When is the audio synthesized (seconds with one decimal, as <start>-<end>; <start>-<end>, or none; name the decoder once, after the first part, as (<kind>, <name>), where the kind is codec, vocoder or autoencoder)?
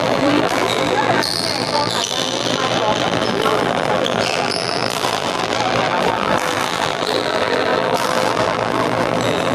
0.0-9.5 (vocoder, BigVGAN v2)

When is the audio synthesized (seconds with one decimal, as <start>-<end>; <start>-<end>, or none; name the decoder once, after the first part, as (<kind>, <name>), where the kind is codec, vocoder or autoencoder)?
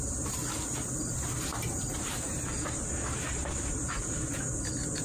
1.5-3.5 (vocoder, BigVGAN v2)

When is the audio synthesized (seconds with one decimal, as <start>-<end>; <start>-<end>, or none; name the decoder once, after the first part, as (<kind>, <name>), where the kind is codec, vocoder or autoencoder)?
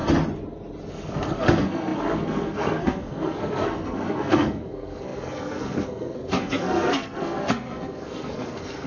0.9-8.9 (codec, SNAC)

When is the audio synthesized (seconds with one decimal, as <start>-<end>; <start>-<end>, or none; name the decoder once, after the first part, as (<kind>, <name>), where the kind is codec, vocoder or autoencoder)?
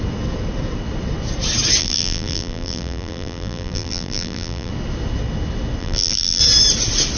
1.8-4.7 (vocoder, BigVGAN v2); 5.8-6.4